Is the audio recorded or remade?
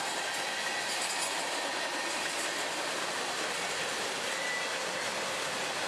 recorded